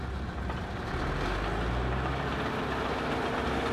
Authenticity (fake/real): real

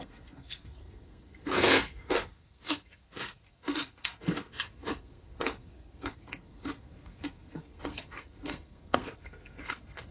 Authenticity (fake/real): fake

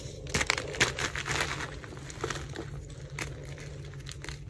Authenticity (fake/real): real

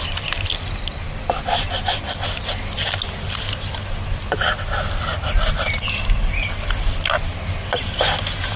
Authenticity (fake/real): real